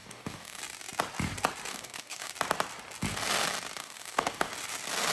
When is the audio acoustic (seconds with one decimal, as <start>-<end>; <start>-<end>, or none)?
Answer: 0.6-1.7; 2.3-3.8; 4.5-5.1